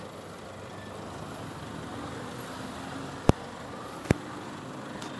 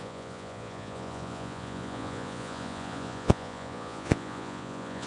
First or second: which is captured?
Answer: first